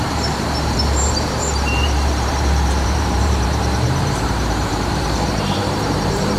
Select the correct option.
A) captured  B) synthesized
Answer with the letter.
B